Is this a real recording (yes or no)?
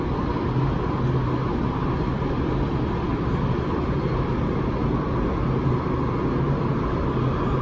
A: yes